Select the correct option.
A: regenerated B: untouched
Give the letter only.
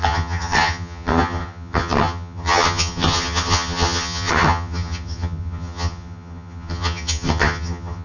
A